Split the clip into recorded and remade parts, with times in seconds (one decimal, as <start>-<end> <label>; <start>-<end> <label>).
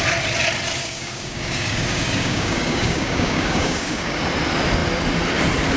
0.0-0.8 recorded; 0.8-4.2 remade; 4.2-5.8 recorded